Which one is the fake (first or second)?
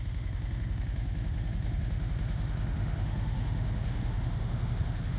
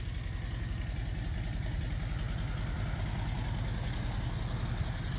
first